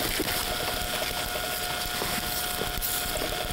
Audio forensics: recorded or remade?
recorded